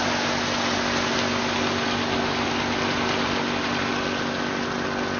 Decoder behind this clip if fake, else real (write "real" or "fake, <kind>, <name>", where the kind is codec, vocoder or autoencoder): real